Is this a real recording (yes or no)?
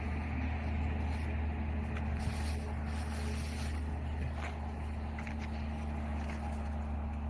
yes